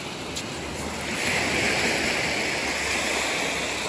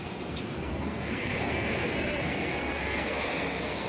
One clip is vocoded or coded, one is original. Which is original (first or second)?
first